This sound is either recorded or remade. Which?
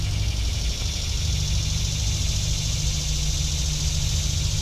recorded